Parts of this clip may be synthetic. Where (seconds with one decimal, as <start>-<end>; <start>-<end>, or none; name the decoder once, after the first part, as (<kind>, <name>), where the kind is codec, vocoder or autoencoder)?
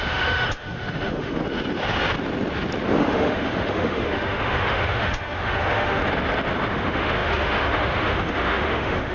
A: 0.0-1.4 (autoencoder, DAC-VAE); 3.0-6.0; 6.7-9.1